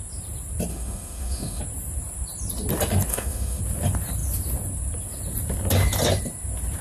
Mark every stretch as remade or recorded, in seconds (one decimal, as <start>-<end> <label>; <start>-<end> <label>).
0.0-0.7 recorded; 0.7-1.6 remade; 1.6-3.1 recorded; 3.1-3.6 remade; 3.6-6.8 recorded